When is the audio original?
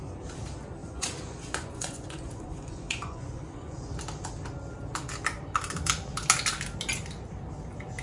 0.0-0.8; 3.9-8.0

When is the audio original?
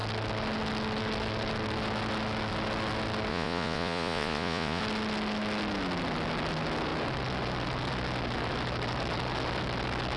0.0-3.3; 4.8-10.2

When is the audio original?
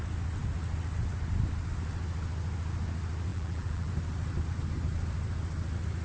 0.0-3.3; 3.9-6.0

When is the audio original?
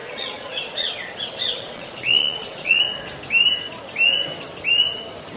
2.8-5.4